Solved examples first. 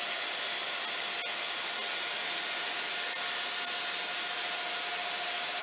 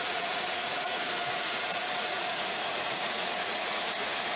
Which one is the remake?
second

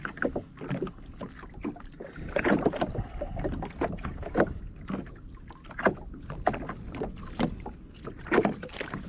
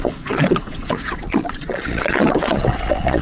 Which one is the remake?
second